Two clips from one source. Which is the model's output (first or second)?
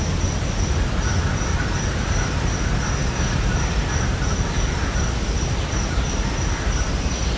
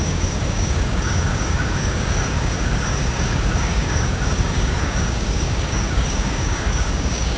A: second